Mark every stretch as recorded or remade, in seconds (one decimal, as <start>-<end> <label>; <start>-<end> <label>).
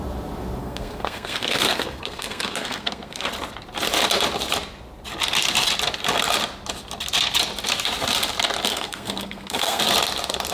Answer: 0.0-0.6 recorded; 0.6-3.3 remade; 3.3-8.7 recorded; 8.7-9.8 remade; 9.8-10.5 recorded